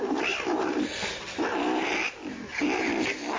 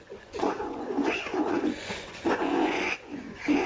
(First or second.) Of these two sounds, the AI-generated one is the second